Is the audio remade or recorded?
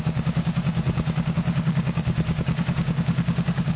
remade